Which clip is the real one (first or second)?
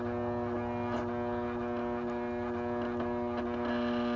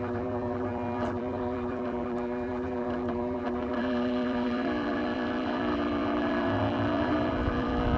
first